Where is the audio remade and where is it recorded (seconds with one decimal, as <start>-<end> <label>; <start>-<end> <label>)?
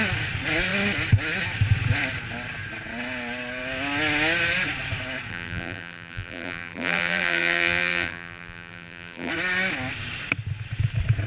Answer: 0.0-5.3 recorded; 5.3-9.3 remade; 9.3-11.3 recorded